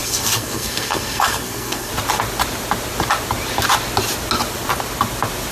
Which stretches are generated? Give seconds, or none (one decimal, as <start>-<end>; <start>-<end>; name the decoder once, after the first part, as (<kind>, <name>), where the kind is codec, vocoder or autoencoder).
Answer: 0.0-1.9 (codec, SNAC)